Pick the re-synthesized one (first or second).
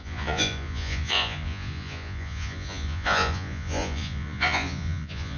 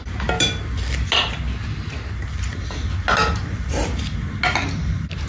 first